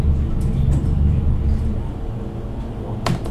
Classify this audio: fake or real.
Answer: real